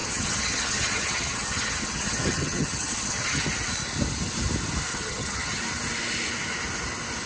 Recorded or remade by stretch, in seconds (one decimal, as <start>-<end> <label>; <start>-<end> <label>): 0.0-3.5 remade; 3.5-4.9 recorded; 4.9-5.6 remade; 5.6-7.3 recorded